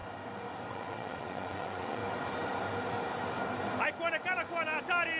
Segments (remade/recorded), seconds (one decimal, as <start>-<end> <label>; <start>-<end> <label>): 0.0-0.7 recorded; 0.7-2.0 remade; 2.0-5.2 recorded